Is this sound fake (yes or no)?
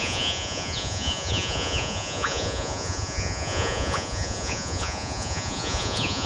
yes